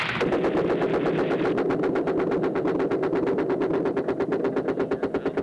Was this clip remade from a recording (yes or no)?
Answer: no